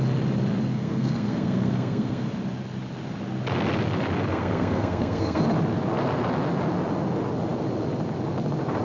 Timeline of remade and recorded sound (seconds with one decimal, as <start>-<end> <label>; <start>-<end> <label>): 0.0-0.7 recorded; 0.7-2.3 remade; 2.3-4.3 recorded; 4.3-5.4 remade; 5.4-8.8 recorded